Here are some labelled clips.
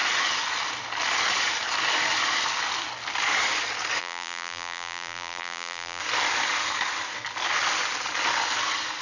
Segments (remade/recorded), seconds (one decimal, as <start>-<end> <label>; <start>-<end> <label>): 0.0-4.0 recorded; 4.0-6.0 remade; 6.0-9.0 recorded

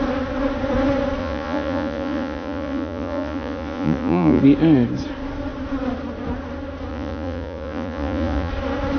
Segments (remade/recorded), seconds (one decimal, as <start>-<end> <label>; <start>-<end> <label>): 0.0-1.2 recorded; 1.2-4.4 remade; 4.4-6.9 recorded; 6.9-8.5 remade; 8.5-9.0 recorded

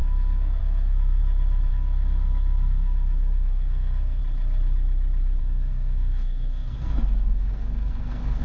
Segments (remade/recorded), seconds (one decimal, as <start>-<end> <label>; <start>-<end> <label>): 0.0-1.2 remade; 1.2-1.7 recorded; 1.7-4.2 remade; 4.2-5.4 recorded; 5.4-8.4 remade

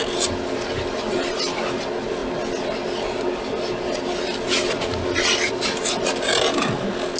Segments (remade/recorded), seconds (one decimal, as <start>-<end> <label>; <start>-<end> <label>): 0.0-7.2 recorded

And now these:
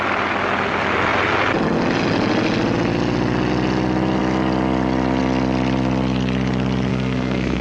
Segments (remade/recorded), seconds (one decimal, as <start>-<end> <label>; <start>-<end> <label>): 0.0-6.9 recorded; 6.9-7.6 remade

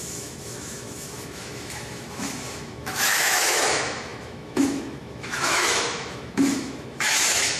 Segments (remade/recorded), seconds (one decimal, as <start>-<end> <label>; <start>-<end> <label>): 0.0-7.6 remade